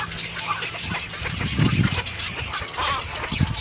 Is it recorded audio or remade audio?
recorded